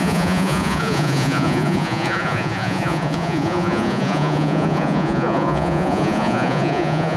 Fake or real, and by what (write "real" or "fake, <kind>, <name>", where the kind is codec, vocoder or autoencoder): fake, vocoder, Vocos